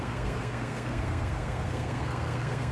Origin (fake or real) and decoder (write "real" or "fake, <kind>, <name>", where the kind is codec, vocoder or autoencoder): fake, codec, SNAC